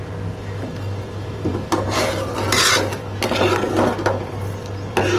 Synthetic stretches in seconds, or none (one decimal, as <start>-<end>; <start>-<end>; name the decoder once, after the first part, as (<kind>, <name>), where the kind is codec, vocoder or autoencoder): none